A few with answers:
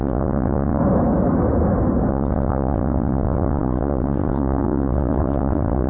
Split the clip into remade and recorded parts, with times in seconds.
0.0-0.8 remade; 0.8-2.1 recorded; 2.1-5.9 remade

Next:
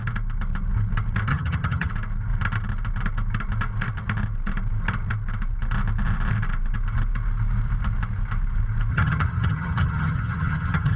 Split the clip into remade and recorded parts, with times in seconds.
0.0-1.3 recorded; 1.3-1.9 remade; 1.9-8.9 recorded; 8.9-11.0 remade

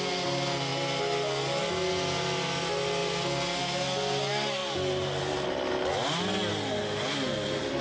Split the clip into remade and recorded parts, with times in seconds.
0.0-7.8 recorded

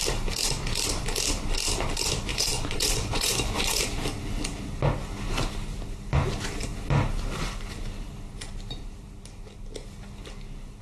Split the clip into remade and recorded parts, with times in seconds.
0.0-2.3 recorded; 2.3-3.8 remade; 3.8-10.8 recorded